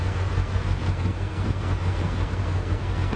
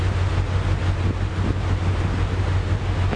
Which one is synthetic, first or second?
first